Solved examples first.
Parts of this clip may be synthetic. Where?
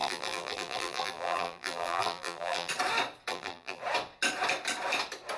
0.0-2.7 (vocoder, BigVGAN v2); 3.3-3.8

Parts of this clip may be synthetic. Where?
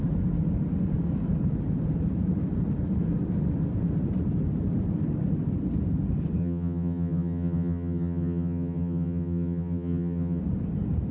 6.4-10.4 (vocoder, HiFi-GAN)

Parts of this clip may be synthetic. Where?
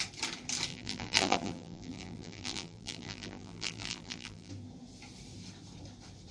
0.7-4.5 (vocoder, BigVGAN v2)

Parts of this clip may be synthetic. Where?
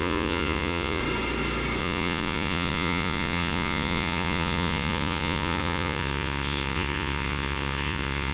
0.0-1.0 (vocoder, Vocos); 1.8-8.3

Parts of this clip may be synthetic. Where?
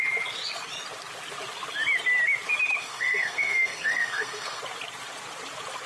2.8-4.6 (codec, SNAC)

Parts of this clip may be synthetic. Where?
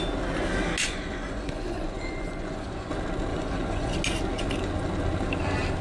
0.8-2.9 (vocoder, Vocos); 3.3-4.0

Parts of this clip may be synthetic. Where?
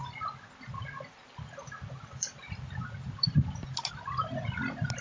none